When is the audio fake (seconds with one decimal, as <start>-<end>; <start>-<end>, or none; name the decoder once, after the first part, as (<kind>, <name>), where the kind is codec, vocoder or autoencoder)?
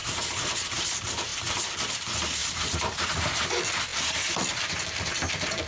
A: 0.0-0.8 (vocoder, BigVGAN v2); 2.4-3.4